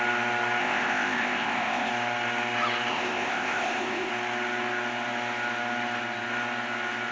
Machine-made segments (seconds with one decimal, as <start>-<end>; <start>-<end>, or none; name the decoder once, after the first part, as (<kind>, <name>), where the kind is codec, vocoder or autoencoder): 0.6-1.9 (codec, ZipCodec); 2.9-4.1